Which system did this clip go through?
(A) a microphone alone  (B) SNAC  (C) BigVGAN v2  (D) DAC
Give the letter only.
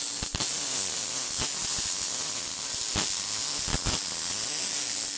A